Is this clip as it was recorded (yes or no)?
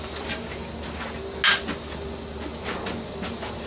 yes